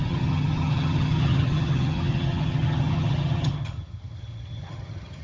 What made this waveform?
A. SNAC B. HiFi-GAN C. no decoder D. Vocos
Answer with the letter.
B